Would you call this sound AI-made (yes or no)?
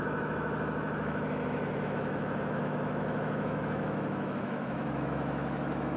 yes